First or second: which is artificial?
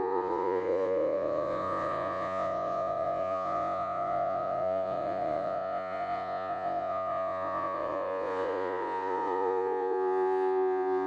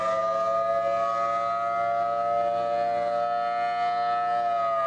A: first